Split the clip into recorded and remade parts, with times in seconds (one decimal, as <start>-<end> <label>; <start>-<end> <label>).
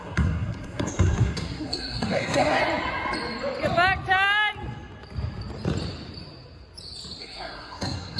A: 0.0-2.6 remade; 2.6-7.2 recorded; 7.2-8.2 remade